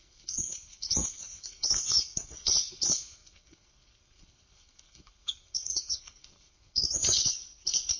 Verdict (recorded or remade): remade